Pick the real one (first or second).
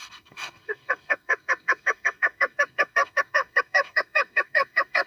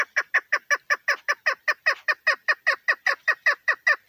second